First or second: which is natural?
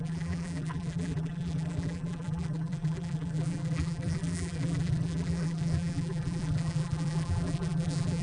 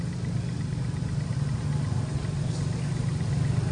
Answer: second